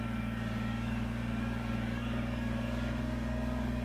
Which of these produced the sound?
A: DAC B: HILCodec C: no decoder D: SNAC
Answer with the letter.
A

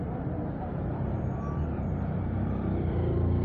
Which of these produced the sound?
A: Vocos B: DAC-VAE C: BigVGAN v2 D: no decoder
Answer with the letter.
D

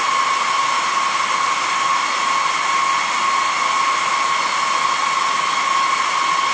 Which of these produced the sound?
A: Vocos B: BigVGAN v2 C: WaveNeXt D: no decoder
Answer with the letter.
D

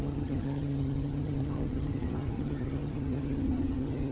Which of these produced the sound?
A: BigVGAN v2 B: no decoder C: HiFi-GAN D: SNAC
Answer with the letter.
C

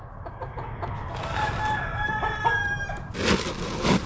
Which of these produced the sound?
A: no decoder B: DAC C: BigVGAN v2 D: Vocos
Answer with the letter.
C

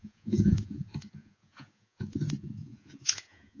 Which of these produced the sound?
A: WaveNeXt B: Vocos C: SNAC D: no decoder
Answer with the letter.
B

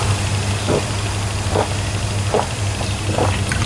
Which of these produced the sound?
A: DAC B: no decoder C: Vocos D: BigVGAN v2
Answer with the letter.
B